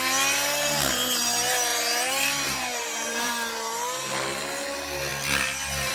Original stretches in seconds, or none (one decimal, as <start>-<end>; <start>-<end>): 0.0-1.7; 3.3-5.9